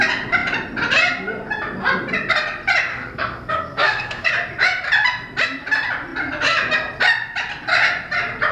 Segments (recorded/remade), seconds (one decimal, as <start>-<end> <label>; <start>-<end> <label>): 0.0-2.9 recorded; 2.9-4.3 remade; 4.3-8.5 recorded